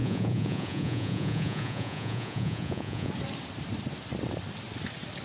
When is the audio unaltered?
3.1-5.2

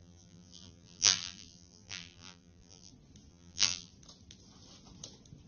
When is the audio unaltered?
2.9-3.3; 3.9-5.5

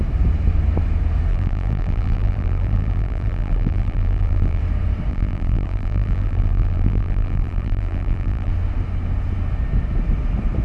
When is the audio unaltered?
0.0-1.3; 4.6-5.1; 8.5-10.6

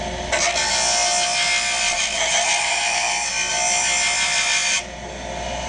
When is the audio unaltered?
0.0-3.5

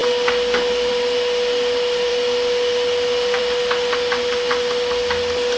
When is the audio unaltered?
0.0-5.6

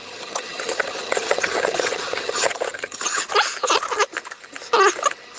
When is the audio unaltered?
3.2-5.4

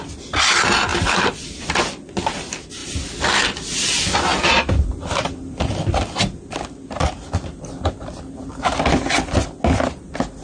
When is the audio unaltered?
0.0-0.9; 1.7-4.3; 8.2-10.4